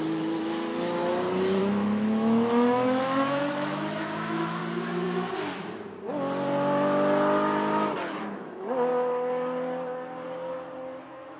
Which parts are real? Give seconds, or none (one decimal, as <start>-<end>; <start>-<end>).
1.0-1.6; 4.6-8.2; 8.9-11.0